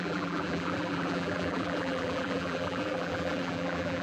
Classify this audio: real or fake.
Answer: fake